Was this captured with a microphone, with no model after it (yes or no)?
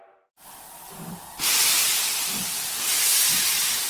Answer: no